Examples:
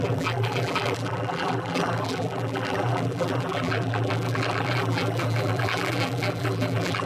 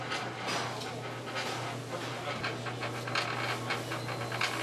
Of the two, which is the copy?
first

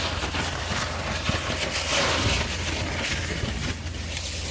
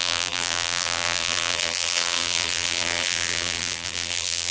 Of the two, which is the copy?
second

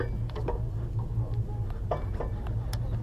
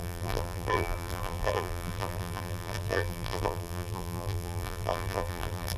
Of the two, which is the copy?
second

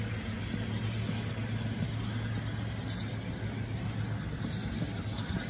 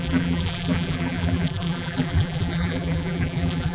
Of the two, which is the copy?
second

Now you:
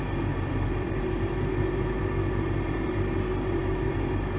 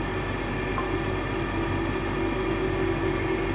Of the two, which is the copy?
first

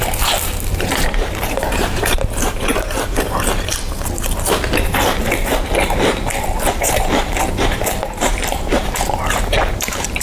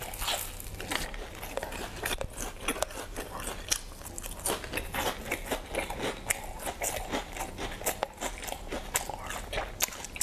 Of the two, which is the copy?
first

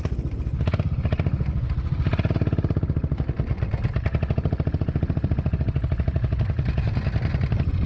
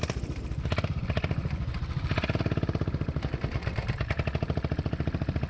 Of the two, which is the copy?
second